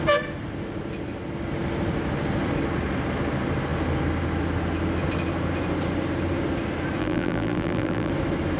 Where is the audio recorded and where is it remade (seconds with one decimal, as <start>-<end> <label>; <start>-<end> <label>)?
0.0-7.0 recorded; 7.0-8.1 remade; 8.1-8.6 recorded

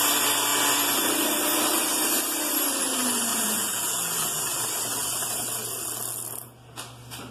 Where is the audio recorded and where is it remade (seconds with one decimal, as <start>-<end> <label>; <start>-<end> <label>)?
0.0-3.3 recorded; 3.3-4.4 remade; 4.4-7.3 recorded

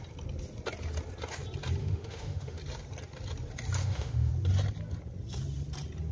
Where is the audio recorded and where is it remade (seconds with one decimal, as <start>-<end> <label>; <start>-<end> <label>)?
0.0-1.8 recorded; 1.8-2.6 remade; 2.6-3.8 recorded; 3.8-4.3 remade; 4.3-6.1 recorded

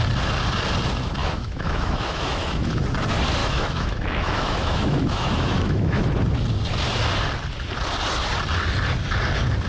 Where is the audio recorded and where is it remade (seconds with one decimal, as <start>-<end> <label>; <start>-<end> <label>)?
0.0-1.2 recorded; 1.2-2.8 remade; 2.8-3.4 recorded; 3.4-6.0 remade; 6.0-9.7 recorded

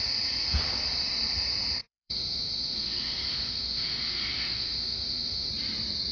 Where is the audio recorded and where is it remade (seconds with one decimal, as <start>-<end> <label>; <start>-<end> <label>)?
0.0-1.8 recorded; 1.8-5.5 remade; 5.5-6.1 recorded